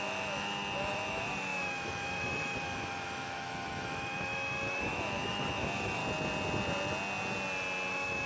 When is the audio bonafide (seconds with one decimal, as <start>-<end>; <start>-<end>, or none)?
6.0-7.9